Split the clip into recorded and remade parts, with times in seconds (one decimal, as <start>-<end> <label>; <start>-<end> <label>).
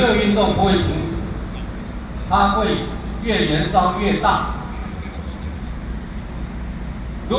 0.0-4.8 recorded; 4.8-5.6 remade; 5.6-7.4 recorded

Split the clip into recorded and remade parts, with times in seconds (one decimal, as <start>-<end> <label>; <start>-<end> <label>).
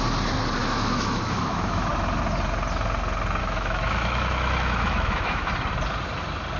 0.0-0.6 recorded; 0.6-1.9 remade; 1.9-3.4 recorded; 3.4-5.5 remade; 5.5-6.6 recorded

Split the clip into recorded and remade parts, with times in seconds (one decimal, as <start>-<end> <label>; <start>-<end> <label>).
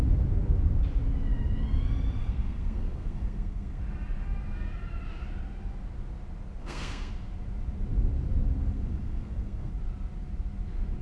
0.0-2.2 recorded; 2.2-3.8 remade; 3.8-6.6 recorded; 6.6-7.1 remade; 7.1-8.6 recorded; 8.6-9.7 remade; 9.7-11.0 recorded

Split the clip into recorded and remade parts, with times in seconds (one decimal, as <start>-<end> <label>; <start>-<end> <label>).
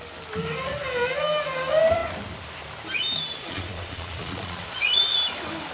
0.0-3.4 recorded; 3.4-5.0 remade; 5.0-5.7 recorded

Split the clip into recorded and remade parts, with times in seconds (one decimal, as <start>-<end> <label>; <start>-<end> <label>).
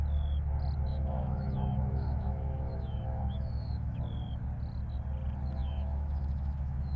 0.0-0.9 recorded; 0.9-4.0 remade; 4.0-5.6 recorded; 5.6-7.0 remade